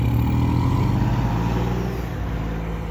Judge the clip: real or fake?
real